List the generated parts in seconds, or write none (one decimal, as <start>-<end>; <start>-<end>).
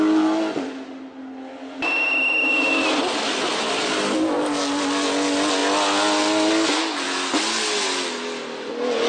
none